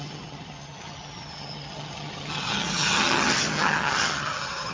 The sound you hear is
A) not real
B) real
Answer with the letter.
A